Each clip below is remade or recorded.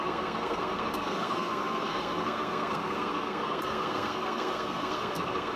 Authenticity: remade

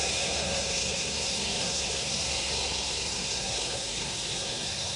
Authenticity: remade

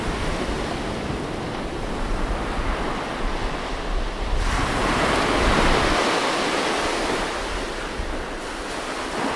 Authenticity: recorded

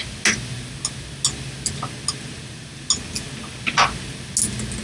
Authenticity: recorded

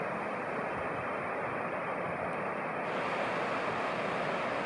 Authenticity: recorded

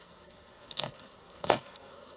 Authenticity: remade